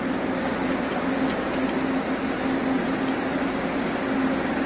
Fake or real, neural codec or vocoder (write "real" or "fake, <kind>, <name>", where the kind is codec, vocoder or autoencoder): real